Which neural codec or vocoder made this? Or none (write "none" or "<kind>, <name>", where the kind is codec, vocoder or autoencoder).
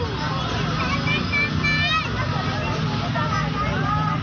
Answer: none